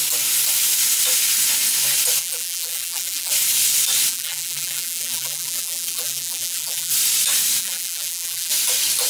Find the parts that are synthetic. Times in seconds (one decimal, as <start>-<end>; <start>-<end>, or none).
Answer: 2.2-3.3; 4.1-6.9; 7.6-8.5